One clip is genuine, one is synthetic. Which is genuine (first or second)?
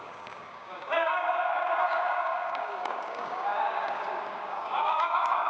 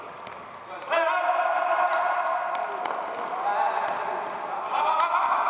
second